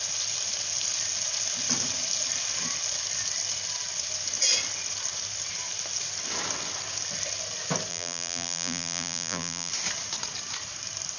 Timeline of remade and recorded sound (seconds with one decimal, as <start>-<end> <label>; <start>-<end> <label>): 0.0-7.9 recorded; 7.9-9.7 remade; 9.7-11.2 recorded